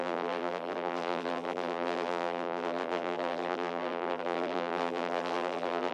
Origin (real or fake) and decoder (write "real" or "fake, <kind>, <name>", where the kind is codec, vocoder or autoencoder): fake, vocoder, BigVGAN v2